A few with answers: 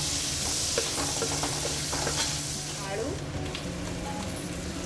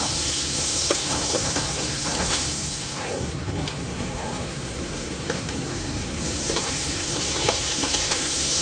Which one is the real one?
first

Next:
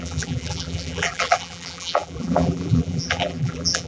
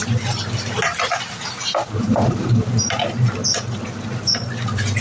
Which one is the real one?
second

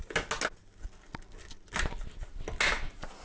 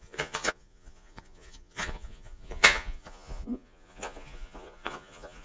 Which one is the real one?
first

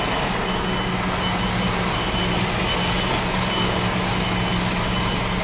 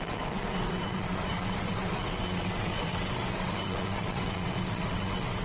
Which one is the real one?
first